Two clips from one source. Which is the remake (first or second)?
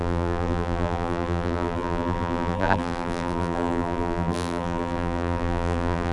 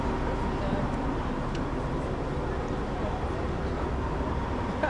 first